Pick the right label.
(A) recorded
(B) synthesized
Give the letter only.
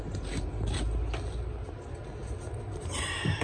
A